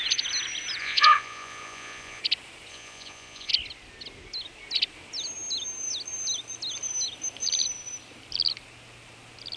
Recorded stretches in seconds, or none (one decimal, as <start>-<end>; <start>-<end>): 0.0-0.8; 2.2-2.7; 3.5-9.6